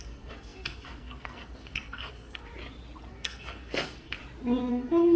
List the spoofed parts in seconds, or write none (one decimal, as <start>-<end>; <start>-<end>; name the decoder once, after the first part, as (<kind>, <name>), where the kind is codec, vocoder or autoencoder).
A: 0.0-2.5 (codec, SNAC); 3.1-4.2; 4.7-5.2